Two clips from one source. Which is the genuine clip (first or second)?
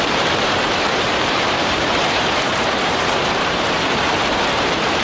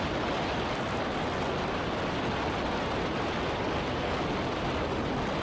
second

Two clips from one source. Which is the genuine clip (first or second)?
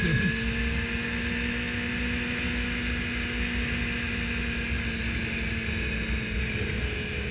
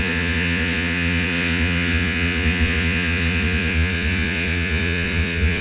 first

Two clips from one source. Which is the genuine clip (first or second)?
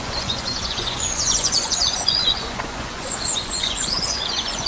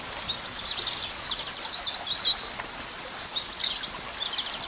second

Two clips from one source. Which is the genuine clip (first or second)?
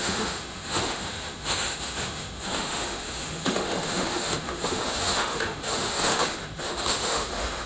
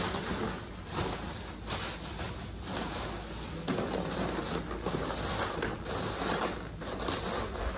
second